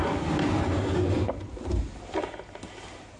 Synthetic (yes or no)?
no